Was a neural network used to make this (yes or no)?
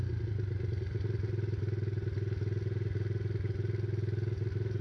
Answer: no